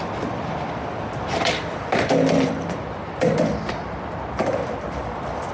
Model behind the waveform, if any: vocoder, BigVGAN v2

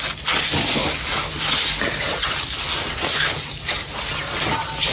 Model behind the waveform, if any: none